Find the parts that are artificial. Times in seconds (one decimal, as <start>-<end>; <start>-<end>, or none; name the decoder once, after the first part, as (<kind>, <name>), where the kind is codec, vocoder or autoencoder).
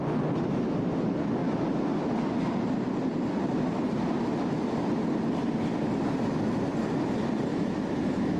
7.5-8.4 (autoencoder, DAC-VAE)